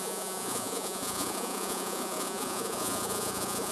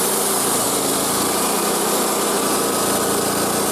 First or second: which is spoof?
first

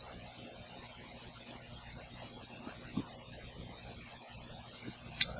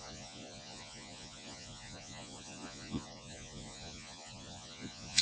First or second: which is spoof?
second